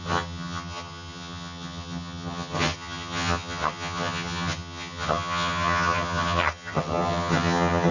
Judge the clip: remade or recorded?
remade